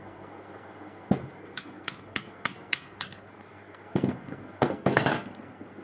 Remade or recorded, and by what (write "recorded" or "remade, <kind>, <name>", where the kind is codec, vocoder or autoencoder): remade, codec, SNAC